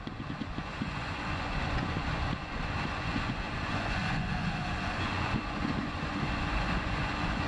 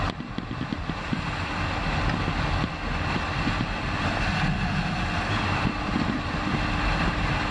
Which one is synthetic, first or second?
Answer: first